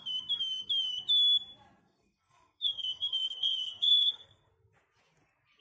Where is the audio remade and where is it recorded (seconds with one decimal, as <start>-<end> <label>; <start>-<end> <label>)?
0.0-1.8 recorded; 1.8-4.5 remade; 4.5-5.6 recorded